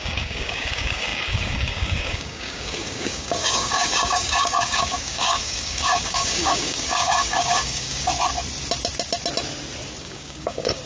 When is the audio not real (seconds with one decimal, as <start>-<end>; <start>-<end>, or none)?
0.0-8.1; 10.0-10.9